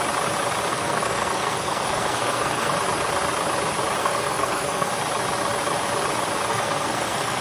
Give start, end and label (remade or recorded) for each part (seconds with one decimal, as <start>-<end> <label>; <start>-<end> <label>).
0.0-0.7 recorded; 0.7-2.7 remade; 2.7-4.0 recorded; 4.0-4.9 remade; 4.9-6.5 recorded; 6.5-7.4 remade